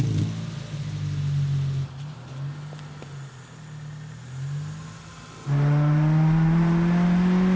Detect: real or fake real